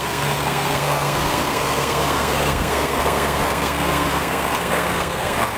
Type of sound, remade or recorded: remade